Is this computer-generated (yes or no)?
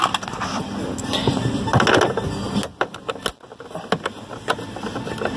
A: no